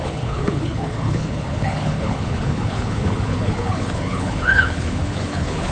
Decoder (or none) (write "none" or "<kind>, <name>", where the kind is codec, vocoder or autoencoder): codec, HILCodec